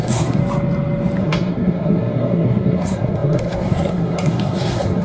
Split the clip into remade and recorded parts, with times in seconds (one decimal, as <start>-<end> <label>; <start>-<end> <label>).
0.0-0.4 remade; 0.4-1.2 recorded; 1.2-5.0 remade